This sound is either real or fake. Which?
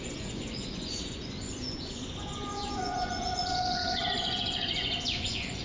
fake